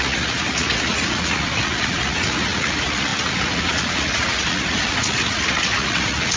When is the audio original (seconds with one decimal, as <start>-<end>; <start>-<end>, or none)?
none

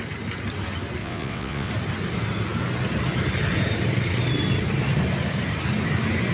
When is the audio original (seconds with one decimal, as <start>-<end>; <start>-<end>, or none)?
0.0-1.0; 1.7-6.3

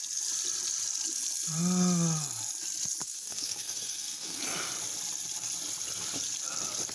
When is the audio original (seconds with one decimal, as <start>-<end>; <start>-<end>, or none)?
0.0-3.0; 4.4-6.9

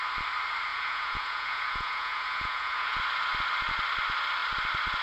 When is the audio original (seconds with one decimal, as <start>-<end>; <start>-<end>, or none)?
0.0-0.7; 3.0-5.0